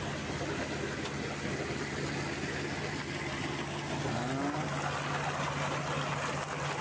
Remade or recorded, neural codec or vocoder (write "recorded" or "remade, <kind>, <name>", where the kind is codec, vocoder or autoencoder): recorded